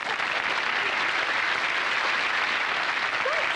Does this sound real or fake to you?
real